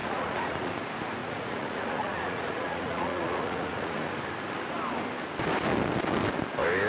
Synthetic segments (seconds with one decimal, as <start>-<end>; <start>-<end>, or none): 0.0-0.7; 1.2-4.1